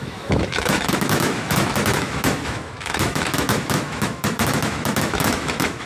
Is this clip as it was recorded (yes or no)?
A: no